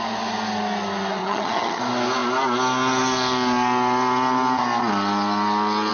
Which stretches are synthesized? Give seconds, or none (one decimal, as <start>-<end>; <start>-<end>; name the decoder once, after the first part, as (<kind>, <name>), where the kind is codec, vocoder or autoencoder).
1.2-1.8 (vocoder, HiFi-GAN)